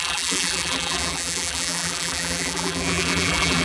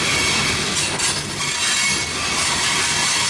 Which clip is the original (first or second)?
second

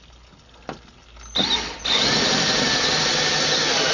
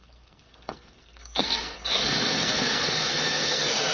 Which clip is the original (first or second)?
first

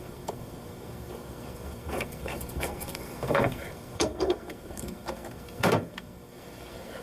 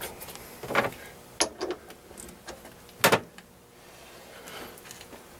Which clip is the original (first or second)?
second